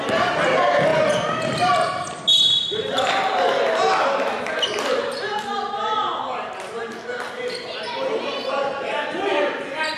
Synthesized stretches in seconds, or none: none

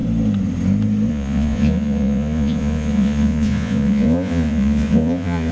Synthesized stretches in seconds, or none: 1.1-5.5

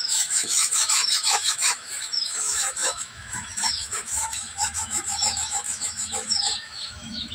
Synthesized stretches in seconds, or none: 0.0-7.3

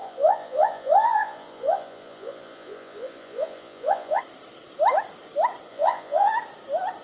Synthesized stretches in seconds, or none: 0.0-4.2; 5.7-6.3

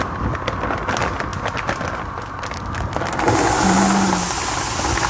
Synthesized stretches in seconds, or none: none